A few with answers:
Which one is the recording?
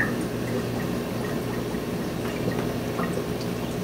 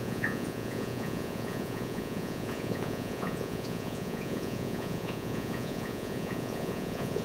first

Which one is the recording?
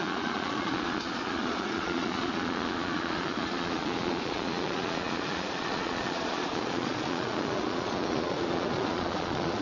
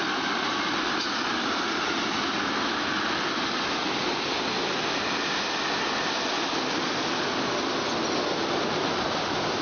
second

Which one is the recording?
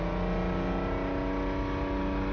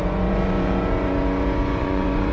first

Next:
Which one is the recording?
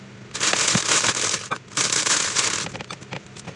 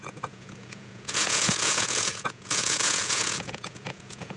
first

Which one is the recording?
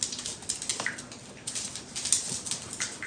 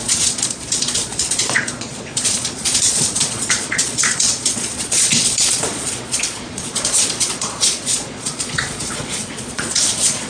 first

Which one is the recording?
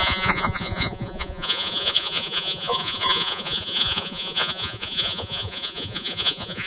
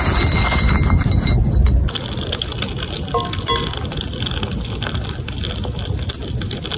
second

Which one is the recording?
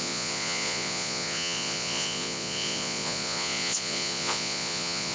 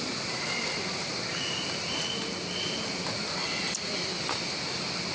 second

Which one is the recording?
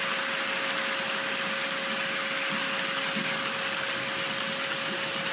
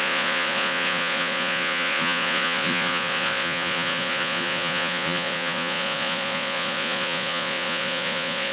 first